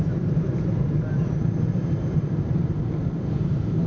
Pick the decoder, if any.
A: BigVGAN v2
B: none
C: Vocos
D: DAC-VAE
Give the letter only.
A